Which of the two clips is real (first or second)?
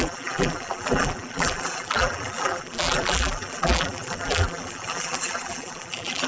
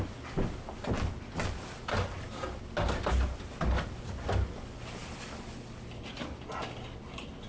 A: second